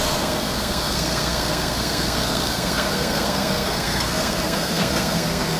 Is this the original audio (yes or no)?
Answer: no